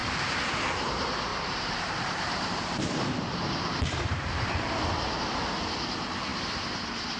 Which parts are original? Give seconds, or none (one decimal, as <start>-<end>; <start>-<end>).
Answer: 0.5-1.3; 4.5-7.2